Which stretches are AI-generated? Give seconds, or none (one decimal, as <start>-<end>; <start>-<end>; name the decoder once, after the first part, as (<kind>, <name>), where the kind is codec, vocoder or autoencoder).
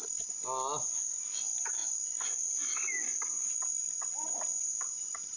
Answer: none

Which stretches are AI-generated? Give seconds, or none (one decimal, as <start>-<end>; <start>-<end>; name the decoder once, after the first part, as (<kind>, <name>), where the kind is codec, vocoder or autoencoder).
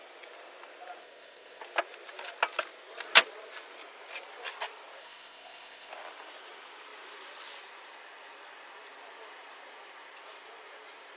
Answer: 1.0-1.6 (codec, ZipCodec); 5.0-5.9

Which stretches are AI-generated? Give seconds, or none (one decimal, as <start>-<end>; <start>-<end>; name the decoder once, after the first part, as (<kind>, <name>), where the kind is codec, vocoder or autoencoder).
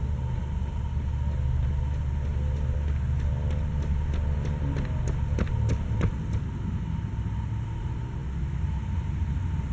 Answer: none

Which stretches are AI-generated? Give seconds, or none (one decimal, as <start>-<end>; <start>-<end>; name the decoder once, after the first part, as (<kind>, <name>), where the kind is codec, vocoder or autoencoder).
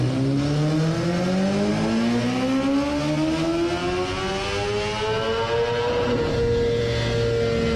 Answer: none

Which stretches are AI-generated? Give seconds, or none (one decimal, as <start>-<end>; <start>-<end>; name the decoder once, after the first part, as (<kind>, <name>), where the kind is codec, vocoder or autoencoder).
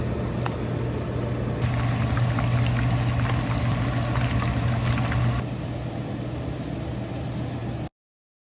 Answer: none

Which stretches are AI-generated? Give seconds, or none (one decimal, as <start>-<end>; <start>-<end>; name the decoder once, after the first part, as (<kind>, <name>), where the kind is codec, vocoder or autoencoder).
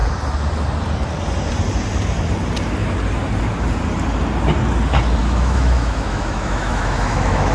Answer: 5.2-7.5 (autoencoder, DAC-VAE)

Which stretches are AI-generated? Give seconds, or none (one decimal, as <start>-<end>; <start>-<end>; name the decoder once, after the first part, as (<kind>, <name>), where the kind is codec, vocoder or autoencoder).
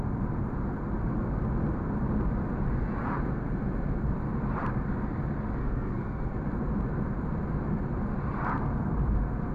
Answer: 5.6-6.3 (codec, SNAC)